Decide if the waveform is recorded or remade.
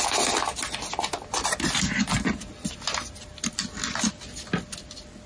recorded